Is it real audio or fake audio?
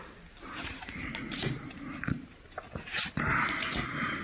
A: real